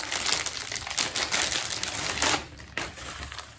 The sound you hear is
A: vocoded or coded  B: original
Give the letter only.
B